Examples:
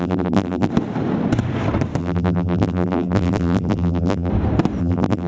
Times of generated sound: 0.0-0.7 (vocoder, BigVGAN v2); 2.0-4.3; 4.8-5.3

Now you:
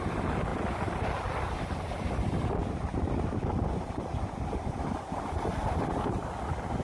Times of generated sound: none

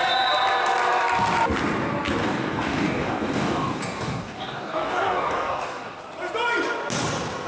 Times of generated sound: 2.2-6.0 (codec, DAC)

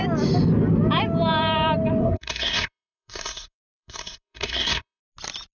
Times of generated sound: 2.0-5.0 (codec, SNAC)

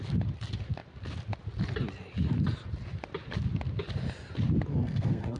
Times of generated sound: 4.7-5.4 (codec, SNAC)

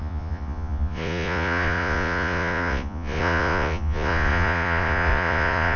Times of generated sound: 0.0-5.8 (vocoder, Vocos)